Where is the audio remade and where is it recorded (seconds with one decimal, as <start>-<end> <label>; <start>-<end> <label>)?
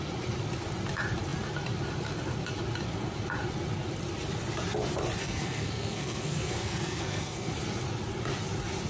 0.0-5.2 recorded; 5.2-7.5 remade; 7.5-8.9 recorded